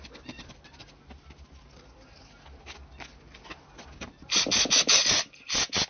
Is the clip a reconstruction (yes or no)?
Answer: no